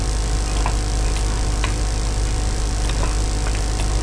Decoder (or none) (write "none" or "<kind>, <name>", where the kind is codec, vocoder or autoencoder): none